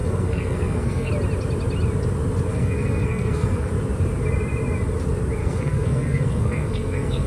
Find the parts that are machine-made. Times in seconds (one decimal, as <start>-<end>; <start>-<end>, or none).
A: 0.0-1.1; 2.5-3.7; 5.4-7.3